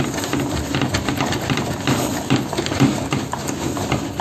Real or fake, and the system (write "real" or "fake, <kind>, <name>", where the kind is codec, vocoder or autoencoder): real